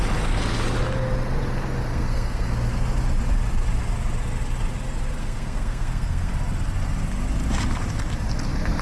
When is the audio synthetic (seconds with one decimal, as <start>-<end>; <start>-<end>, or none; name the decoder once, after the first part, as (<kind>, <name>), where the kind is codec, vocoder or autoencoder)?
1.9-2.5 (codec, SNAC); 5.2-6.3